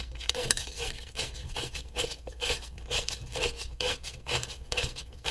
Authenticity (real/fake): fake